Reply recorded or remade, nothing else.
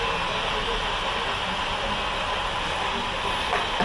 recorded